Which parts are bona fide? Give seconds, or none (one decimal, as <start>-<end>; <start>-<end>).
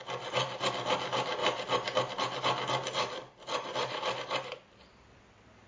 0.0-5.7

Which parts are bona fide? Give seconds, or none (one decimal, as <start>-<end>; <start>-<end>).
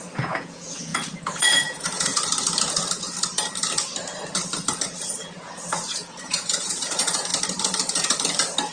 2.1-5.2; 7.3-8.7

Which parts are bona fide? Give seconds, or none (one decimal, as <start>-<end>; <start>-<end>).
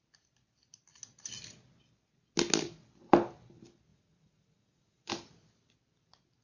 0.0-3.9; 5.1-6.4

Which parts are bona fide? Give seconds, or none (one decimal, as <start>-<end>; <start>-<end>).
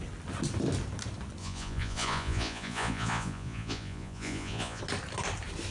0.0-1.4; 4.8-5.7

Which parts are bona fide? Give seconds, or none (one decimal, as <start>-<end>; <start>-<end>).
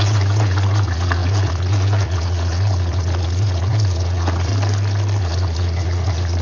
4.5-5.2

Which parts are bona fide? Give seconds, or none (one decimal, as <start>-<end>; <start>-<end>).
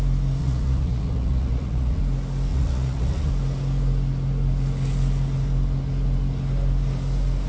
0.0-0.4; 2.0-2.5; 3.3-7.5